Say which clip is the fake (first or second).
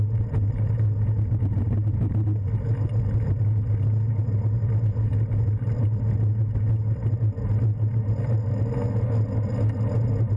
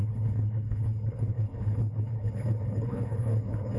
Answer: second